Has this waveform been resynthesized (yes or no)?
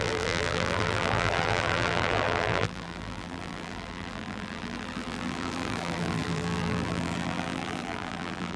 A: yes